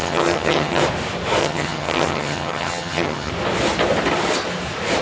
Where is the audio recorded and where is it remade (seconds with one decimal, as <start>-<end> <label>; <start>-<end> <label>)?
0.0-0.8 remade; 0.8-1.4 recorded; 1.4-3.3 remade; 3.3-5.0 recorded